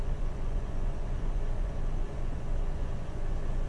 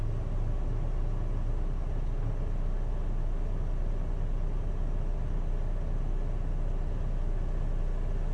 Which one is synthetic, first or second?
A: first